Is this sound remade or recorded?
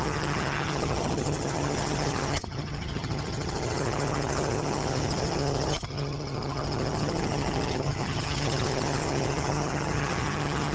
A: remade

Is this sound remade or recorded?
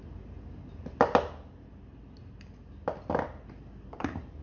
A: recorded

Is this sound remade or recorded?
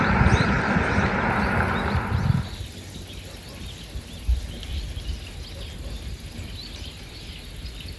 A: recorded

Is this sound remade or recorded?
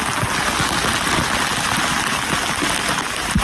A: recorded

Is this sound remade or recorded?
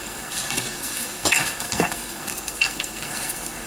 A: remade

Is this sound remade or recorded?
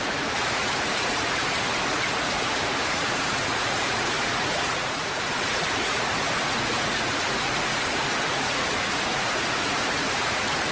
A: remade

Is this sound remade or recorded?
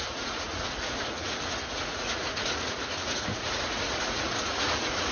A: remade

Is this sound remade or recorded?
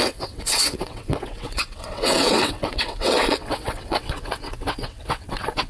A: remade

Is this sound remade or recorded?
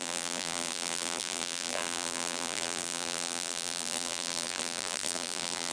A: remade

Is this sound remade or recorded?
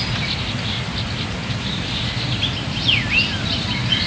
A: recorded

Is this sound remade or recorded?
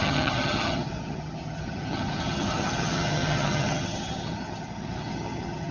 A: remade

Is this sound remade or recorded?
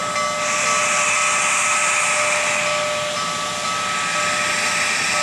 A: recorded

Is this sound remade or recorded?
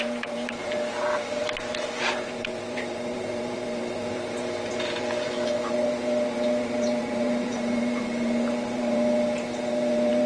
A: remade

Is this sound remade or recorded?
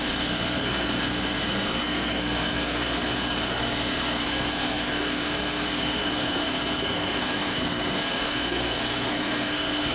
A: remade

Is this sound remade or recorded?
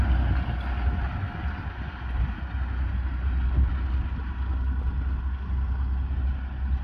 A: recorded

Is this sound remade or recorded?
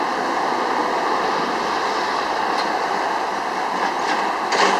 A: recorded